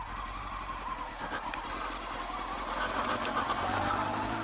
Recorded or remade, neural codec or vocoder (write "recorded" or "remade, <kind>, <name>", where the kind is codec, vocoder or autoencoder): recorded